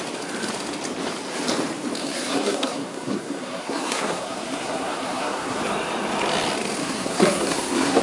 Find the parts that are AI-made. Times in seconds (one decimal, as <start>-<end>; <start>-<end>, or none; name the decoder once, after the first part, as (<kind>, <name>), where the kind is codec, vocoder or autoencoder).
2.0-5.6 (codec, SNAC); 6.8-8.0